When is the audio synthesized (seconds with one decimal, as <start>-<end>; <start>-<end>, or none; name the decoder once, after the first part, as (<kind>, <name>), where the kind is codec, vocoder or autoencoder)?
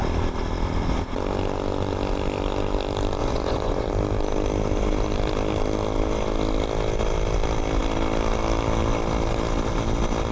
3.2-3.9 (vocoder, Vocos)